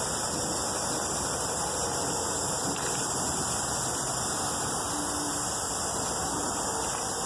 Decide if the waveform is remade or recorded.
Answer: recorded